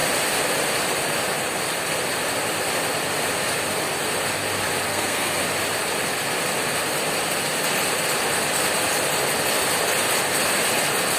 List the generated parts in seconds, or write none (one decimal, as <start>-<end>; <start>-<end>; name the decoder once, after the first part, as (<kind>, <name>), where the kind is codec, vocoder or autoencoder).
4.9-5.4 (codec, SNAC)